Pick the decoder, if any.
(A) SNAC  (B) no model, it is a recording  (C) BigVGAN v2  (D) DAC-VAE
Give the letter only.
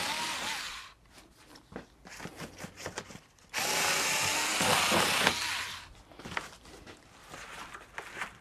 B